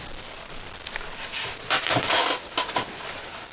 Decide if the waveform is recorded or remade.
recorded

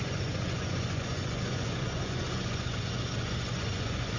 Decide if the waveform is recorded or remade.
remade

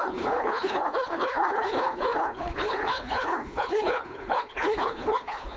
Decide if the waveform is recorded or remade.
remade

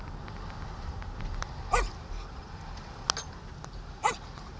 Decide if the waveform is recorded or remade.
recorded